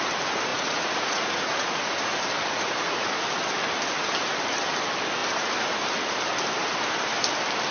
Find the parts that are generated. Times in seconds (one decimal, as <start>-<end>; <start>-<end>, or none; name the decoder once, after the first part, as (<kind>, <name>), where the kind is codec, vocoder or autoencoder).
0.5-2.1 (vocoder, Vocos); 2.5-3.1